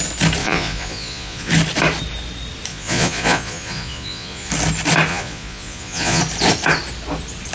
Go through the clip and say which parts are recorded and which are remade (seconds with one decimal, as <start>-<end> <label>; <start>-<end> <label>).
0.0-0.4 recorded; 0.4-1.5 remade; 1.5-2.7 recorded; 2.7-4.5 remade; 4.5-5.1 recorded; 5.1-6.2 remade; 6.2-7.5 recorded